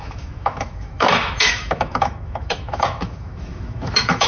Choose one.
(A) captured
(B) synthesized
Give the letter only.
B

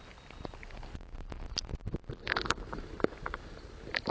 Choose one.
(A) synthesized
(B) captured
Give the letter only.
B